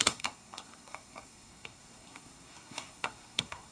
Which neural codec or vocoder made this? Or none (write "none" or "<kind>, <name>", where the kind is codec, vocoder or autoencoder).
codec, SNAC